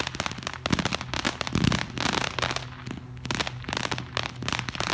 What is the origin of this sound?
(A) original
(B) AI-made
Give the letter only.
A